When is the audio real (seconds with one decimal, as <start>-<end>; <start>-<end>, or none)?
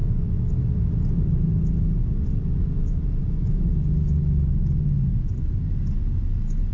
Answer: 0.5-3.2; 3.7-6.7